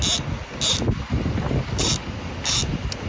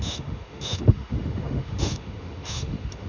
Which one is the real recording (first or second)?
first